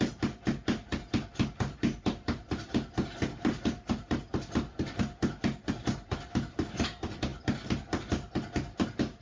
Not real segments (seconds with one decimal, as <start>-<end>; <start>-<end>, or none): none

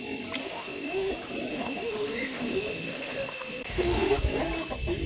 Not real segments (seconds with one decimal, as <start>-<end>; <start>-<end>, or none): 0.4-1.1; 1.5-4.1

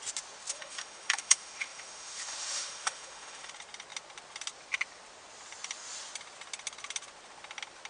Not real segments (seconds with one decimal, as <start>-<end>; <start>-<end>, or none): 0.5-3.5

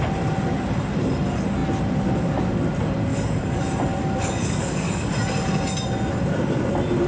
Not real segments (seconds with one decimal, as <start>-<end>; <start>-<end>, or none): 3.1-3.6; 4.0-5.1